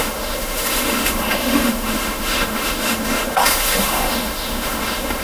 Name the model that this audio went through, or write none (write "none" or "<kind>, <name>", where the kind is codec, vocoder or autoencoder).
autoencoder, DAC-VAE